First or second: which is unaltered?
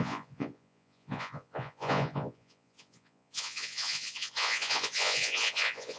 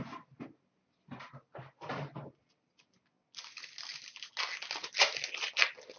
second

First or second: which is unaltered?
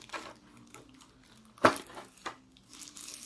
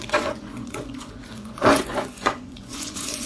first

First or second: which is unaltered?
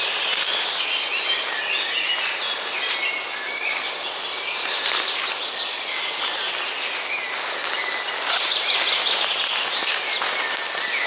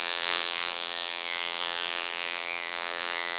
first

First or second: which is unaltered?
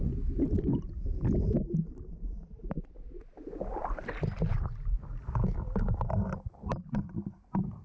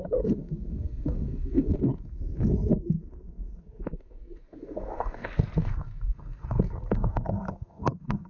first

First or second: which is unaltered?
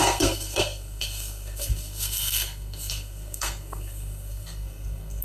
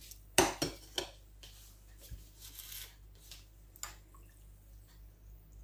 second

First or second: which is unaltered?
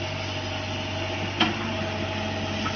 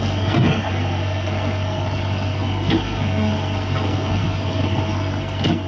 first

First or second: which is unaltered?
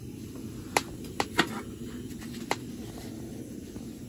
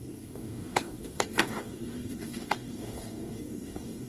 first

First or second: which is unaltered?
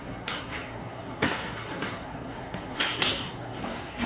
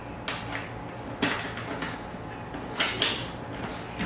second